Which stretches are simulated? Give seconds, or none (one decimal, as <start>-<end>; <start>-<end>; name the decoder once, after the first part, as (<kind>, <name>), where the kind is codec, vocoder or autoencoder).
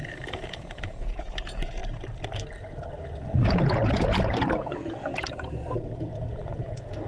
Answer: 0.0-1.8 (vocoder, Vocos); 3.4-7.1